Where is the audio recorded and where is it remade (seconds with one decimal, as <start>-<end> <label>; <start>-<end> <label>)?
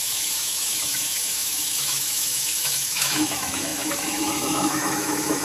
0.0-5.4 remade